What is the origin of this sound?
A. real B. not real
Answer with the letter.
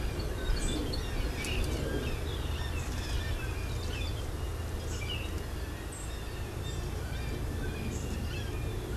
A